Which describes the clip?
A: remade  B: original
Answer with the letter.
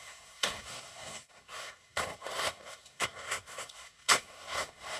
A